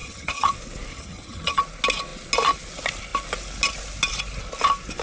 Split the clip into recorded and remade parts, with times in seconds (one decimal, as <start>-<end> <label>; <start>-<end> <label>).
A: 0.0-0.5 remade; 0.5-0.9 recorded; 0.9-1.6 remade; 1.6-5.0 recorded